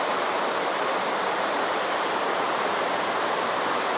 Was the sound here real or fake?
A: fake